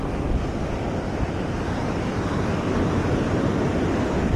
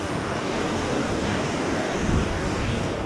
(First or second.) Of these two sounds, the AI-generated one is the second